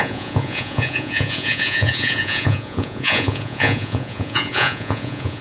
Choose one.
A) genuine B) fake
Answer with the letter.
B